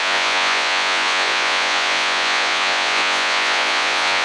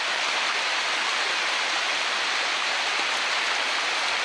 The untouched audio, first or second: second